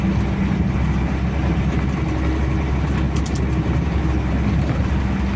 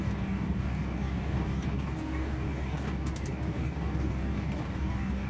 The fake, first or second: second